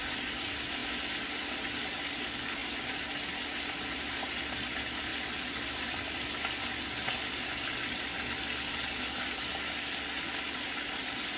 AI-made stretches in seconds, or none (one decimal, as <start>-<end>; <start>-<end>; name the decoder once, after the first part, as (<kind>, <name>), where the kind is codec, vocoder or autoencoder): none